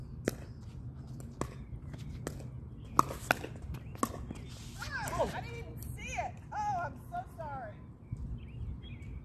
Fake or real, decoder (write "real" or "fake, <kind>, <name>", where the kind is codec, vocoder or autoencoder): real